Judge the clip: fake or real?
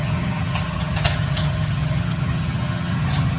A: fake